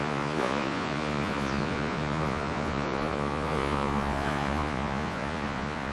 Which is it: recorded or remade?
remade